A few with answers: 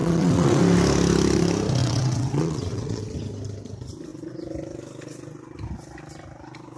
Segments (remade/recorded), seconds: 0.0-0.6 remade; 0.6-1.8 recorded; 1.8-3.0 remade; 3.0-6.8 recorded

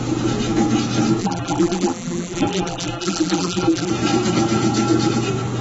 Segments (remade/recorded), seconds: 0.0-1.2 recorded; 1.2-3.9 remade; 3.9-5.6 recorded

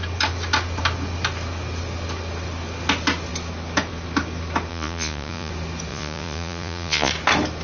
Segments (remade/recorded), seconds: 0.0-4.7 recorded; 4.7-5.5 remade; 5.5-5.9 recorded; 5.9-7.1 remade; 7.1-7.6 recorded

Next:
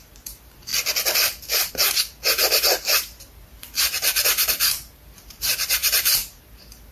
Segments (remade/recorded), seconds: 0.0-0.7 remade; 0.7-1.7 recorded; 1.7-6.9 remade